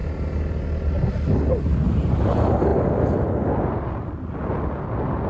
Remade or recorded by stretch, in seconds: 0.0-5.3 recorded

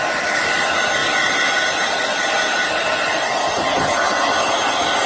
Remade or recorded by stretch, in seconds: 0.0-5.1 recorded

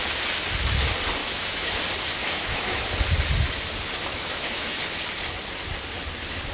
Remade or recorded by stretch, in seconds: 0.0-1.2 recorded; 1.2-1.8 remade; 1.8-2.2 recorded; 2.2-2.8 remade; 2.8-4.1 recorded; 4.1-4.8 remade; 4.8-6.5 recorded